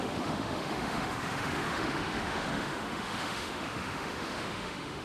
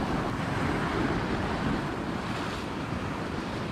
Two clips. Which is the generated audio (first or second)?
first